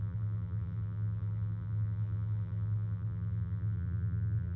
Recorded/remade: remade